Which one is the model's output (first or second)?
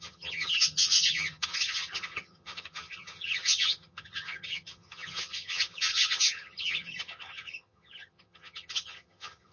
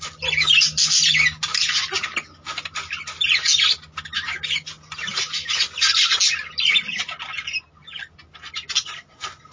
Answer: first